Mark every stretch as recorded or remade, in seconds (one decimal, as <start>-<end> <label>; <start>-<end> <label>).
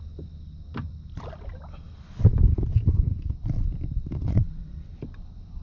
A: 0.0-4.2 recorded; 4.2-4.9 remade; 4.9-5.6 recorded